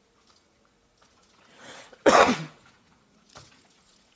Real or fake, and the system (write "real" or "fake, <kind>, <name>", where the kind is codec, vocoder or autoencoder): fake, vocoder, Vocos